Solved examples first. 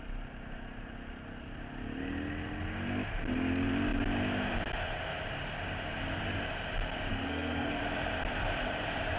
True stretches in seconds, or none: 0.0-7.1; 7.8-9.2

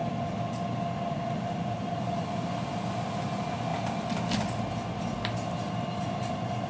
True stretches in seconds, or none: 0.0-6.7

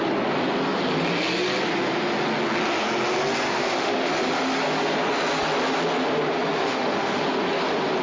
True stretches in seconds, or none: 0.0-3.5; 4.1-6.6; 7.2-8.0